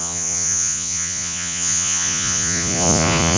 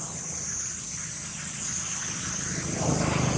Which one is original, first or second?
second